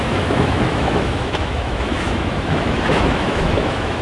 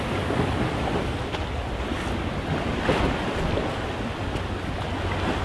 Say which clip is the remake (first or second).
first